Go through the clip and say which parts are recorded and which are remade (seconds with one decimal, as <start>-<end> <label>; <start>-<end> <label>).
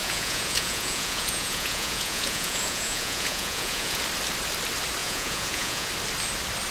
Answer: 0.0-4.0 remade; 4.0-5.0 recorded; 5.0-5.9 remade; 5.9-6.7 recorded